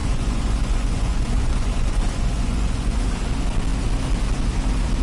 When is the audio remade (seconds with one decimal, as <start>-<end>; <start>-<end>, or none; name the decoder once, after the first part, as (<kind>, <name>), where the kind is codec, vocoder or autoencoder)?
0.0-3.0 (vocoder, Vocos)